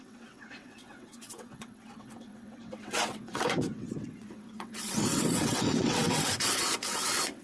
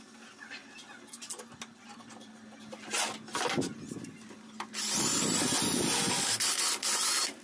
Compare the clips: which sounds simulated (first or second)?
first